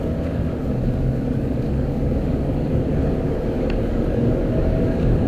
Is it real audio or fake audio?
fake